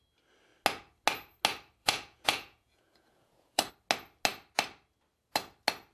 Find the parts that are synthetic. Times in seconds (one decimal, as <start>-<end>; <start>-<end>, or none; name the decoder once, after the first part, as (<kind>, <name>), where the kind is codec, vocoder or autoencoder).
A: 1.8-3.7 (vocoder, Vocos)